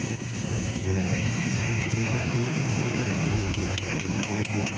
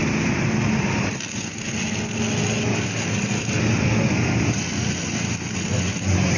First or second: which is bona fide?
second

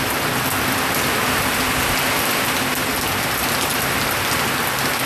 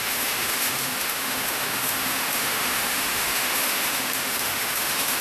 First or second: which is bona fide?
first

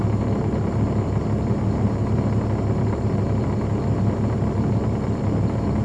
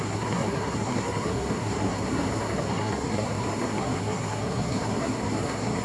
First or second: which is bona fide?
first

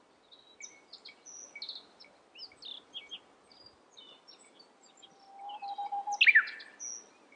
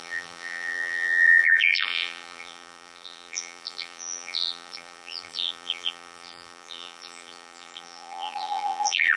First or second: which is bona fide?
first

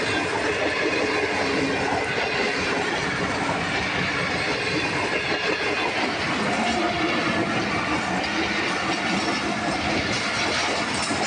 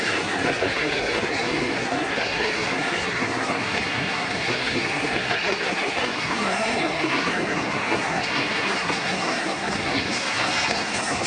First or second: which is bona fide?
first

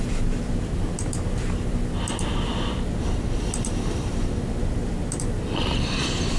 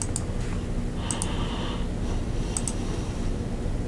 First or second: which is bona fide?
second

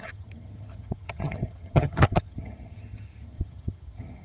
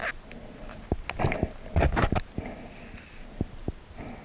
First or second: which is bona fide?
second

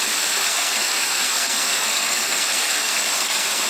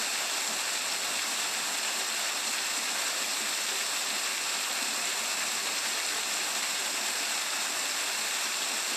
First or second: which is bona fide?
second